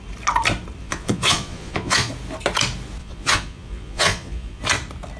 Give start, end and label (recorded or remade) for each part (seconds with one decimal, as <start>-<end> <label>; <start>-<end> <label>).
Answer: 0.0-0.8 recorded; 0.8-2.1 remade; 2.1-3.0 recorded; 3.0-4.6 remade; 4.6-5.2 recorded